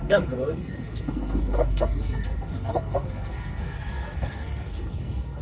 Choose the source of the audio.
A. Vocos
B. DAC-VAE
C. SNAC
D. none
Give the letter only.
C